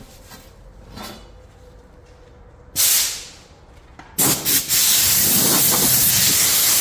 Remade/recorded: recorded